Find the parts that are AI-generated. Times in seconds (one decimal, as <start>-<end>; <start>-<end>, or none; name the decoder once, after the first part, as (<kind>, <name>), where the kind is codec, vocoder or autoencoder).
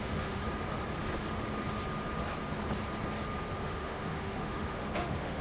0.0-0.4 (autoencoder, DAC-VAE); 3.6-5.4